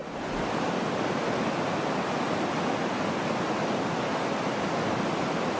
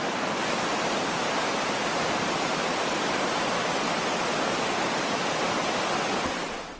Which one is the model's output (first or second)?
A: second